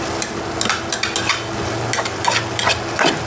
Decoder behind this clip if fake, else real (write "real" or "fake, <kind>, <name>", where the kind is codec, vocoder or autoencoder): real